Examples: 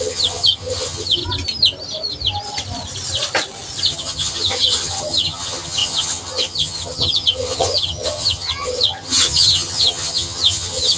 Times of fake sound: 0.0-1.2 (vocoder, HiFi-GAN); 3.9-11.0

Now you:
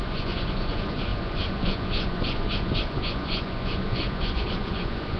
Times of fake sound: 0.0-5.2 (vocoder, Vocos)

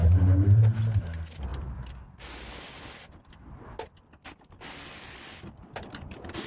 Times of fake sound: 0.0-0.8 (vocoder, BigVGAN v2)